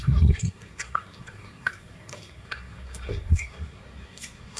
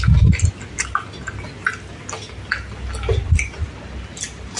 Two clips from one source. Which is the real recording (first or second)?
second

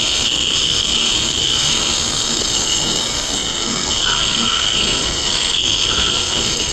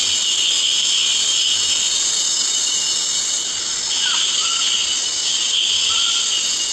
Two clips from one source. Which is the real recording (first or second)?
second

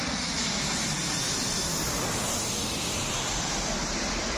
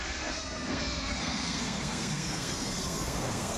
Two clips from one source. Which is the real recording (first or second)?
first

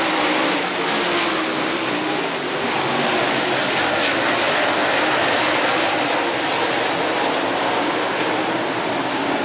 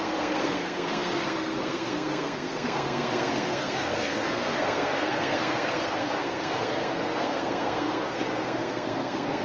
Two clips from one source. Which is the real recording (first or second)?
first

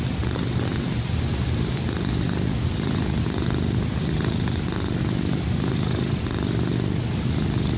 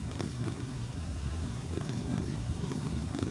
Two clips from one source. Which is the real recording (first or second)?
first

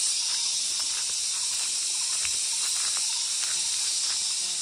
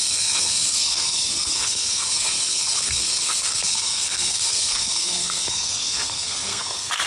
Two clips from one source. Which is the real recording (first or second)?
first